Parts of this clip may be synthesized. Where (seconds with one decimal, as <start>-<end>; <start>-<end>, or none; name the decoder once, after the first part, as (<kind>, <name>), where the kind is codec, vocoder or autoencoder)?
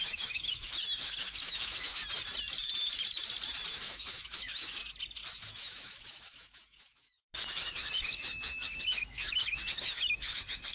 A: 0.0-2.0 (autoencoder, DAC-VAE); 3.7-4.8; 5.4-10.7